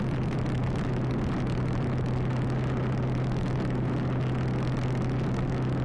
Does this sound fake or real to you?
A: real